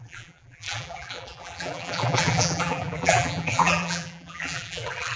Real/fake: fake